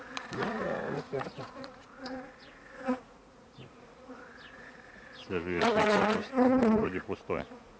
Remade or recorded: remade